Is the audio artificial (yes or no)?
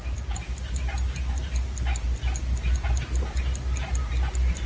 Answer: no